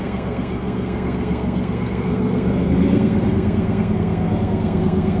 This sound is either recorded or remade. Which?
remade